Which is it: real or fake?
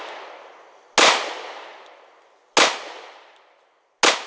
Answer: real